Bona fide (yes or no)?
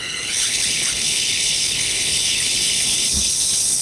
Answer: no